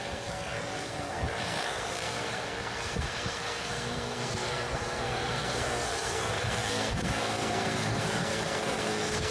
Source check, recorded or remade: remade